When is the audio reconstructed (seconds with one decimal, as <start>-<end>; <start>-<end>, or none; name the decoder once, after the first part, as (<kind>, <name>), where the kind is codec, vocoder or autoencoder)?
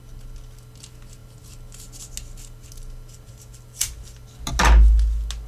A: none